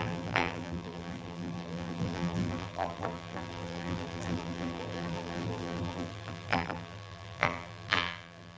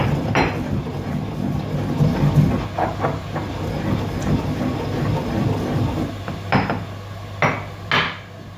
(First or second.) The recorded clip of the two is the second